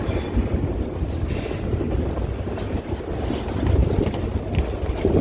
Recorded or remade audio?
recorded